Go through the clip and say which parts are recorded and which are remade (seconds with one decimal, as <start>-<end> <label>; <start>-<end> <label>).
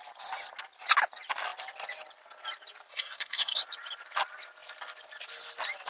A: 0.0-2.9 recorded; 2.9-3.6 remade; 3.6-5.9 recorded